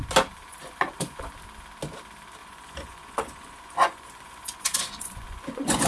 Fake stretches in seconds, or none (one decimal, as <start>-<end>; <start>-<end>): 0.5-1.2; 2.4-5.9